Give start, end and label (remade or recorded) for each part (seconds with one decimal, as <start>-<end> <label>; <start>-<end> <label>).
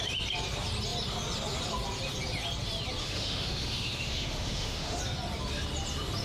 0.0-3.0 recorded; 3.0-5.0 remade; 5.0-6.2 recorded